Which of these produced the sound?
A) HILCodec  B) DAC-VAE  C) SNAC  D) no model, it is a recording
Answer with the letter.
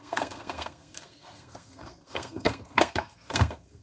C